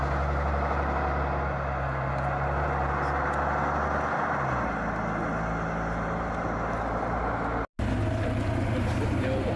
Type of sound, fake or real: real